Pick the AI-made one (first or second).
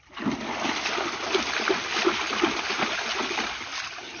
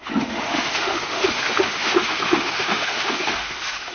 second